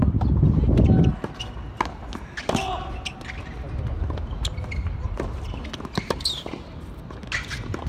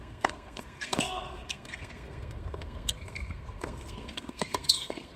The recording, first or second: first